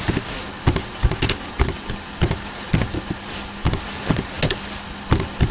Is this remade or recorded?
recorded